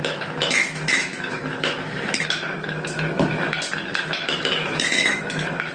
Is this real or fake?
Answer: fake